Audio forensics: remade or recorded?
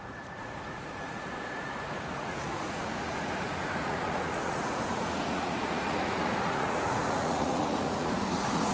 remade